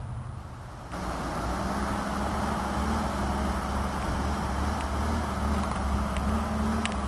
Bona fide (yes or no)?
yes